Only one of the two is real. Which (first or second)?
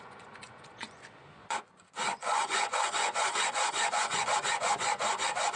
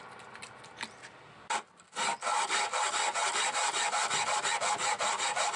second